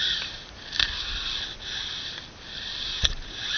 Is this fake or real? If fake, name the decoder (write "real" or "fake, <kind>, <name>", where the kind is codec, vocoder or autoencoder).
real